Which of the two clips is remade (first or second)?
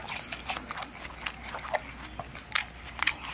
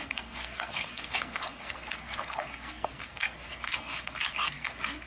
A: second